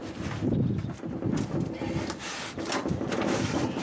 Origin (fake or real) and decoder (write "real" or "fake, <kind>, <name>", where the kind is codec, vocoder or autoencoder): real